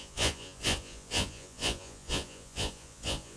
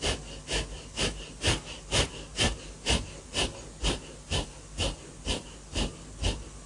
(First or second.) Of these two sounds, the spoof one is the first